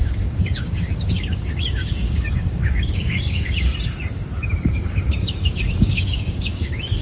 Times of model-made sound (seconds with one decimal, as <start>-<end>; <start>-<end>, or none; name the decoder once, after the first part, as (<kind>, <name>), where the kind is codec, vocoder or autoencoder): 0.0-3.7 (codec, DAC); 4.7-7.0